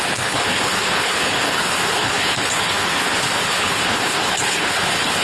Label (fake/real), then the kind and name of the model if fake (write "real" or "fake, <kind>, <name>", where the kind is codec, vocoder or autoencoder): fake, codec, HILCodec